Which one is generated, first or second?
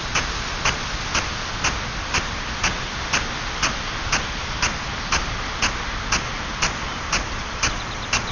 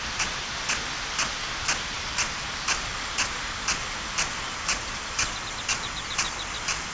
second